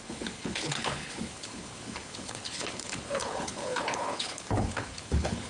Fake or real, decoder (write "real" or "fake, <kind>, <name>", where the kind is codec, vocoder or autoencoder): fake, codec, HILCodec